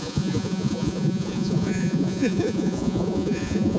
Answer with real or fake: fake